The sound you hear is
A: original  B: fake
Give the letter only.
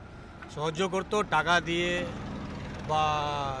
A